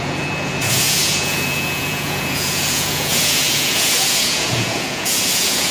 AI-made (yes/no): yes